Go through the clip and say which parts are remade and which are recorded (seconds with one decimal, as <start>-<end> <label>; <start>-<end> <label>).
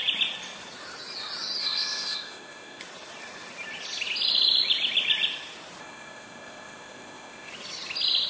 0.0-1.6 recorded; 1.6-2.8 remade; 2.8-5.8 recorded; 5.8-7.5 remade; 7.5-8.3 recorded